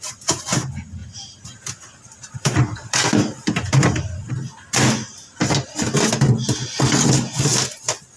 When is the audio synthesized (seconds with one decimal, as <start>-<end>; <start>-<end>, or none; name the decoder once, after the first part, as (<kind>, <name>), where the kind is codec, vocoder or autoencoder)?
1.0-4.3 (vocoder, BigVGAN v2)